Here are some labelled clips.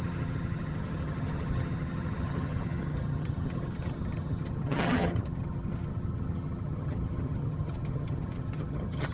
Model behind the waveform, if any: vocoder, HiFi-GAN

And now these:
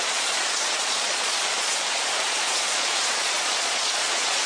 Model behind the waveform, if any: vocoder, Vocos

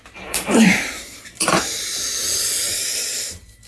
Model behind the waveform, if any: vocoder, BigVGAN v2